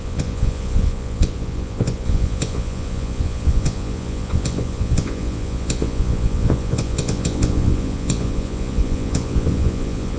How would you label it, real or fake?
fake